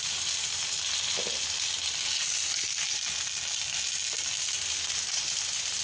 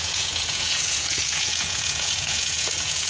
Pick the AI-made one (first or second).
second